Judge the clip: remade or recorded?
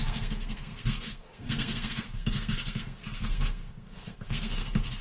remade